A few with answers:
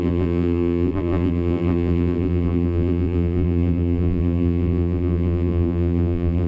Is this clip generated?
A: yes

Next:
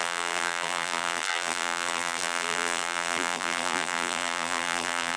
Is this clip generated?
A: yes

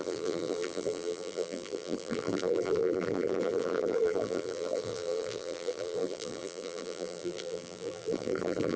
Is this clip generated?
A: yes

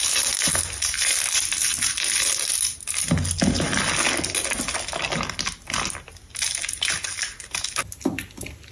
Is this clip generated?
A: no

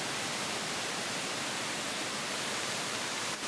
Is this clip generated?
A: yes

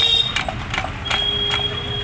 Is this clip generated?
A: no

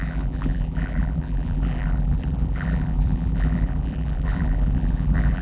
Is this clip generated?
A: yes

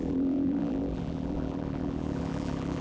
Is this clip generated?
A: yes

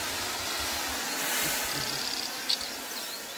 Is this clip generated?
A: no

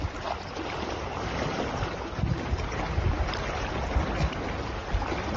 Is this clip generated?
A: no